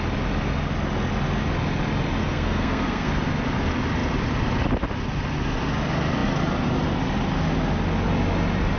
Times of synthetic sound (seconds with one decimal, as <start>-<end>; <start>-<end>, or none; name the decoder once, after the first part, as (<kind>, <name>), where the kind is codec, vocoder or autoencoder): 2.2-3.1 (codec, SNAC)